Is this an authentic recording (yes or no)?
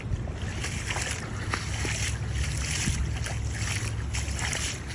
yes